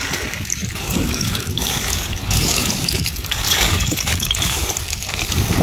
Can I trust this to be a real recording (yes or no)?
no